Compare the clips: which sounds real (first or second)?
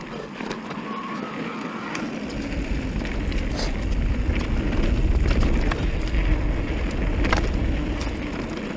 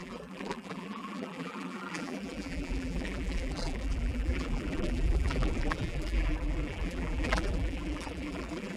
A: first